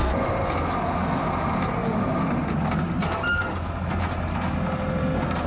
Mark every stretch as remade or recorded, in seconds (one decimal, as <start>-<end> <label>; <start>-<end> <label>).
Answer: 0.0-5.5 recorded